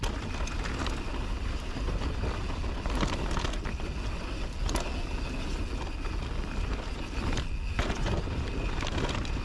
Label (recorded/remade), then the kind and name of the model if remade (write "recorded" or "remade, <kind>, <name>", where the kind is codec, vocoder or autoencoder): recorded